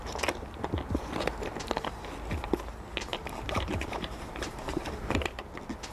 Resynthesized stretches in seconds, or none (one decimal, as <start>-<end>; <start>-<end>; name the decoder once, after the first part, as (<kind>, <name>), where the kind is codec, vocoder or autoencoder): 3.1-5.4 (vocoder, BigVGAN v2)